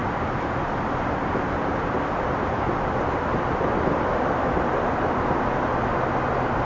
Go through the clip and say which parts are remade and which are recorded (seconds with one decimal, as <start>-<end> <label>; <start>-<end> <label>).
0.0-6.6 recorded